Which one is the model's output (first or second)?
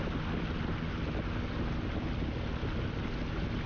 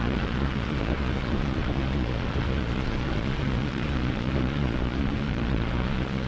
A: second